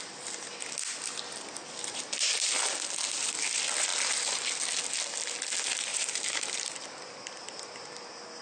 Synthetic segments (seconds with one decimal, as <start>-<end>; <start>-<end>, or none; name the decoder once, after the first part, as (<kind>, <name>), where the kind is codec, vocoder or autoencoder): 5.9-7.0 (vocoder, BigVGAN v2)